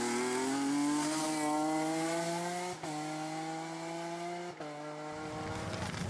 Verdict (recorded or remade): recorded